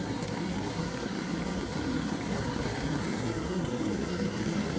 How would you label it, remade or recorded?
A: remade